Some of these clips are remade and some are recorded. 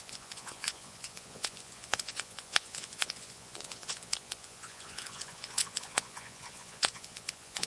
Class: remade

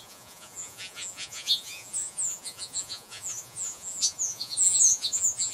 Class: remade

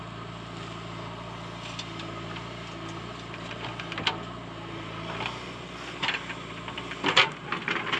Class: recorded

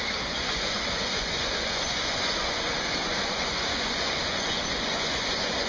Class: remade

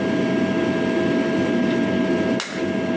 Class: recorded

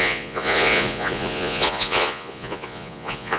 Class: remade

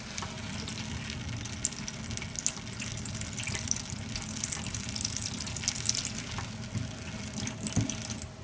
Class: recorded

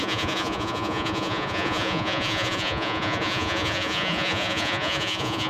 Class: remade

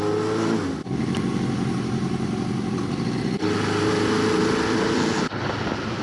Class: recorded